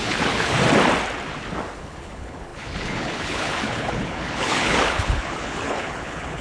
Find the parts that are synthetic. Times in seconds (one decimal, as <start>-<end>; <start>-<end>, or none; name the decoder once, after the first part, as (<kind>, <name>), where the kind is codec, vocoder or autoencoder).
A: 0.0-0.6 (codec, HILCodec); 1.8-6.4